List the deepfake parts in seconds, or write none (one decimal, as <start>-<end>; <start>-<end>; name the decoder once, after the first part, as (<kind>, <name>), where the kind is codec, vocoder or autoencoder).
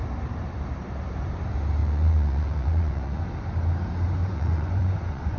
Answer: 1.8-3.2 (vocoder, Vocos); 4.2-5.4